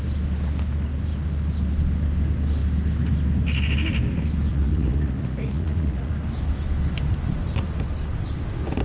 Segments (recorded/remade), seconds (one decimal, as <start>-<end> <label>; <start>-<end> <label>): 0.0-4.5 recorded; 4.5-6.1 remade; 6.1-8.8 recorded